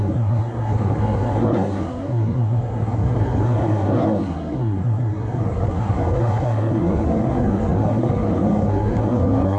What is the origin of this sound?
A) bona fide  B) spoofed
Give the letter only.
B